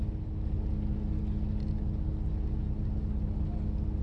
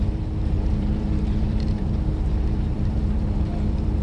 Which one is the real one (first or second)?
first